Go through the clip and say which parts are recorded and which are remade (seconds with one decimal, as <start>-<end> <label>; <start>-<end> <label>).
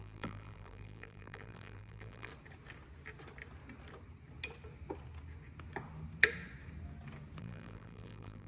0.0-2.3 remade; 2.3-7.4 recorded; 7.4-8.5 remade